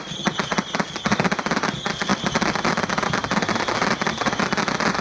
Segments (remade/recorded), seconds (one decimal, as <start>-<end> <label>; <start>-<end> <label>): 0.0-5.0 recorded